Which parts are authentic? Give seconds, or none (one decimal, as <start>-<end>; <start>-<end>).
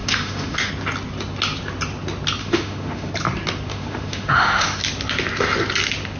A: 0.7-2.4; 3.1-3.7; 4.8-6.2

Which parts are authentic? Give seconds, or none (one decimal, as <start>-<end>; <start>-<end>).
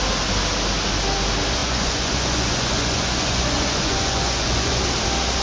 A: 0.0-1.6; 4.8-5.4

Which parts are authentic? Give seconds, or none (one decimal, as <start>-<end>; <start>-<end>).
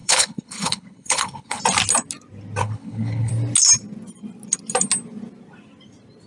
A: 1.6-2.6; 3.3-6.3